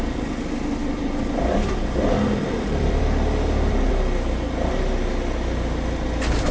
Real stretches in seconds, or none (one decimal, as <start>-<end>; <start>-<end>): 0.0-0.8; 3.9-6.5